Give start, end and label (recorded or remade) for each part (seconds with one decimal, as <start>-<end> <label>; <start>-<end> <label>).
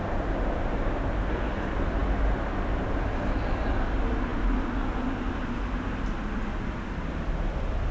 0.0-7.9 recorded